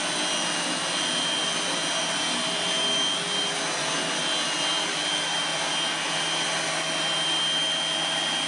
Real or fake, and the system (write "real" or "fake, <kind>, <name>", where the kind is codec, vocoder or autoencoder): real